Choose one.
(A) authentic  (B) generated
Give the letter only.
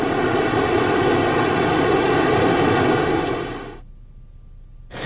A